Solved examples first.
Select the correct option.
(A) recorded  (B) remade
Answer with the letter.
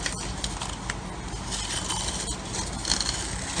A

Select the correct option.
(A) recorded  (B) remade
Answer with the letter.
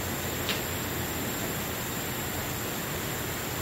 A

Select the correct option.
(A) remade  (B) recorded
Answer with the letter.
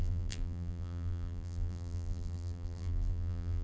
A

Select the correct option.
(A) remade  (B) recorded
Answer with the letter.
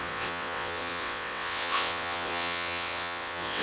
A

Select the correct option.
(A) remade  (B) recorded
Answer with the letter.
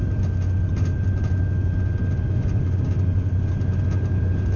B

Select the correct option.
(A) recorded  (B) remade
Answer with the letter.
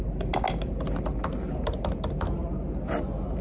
A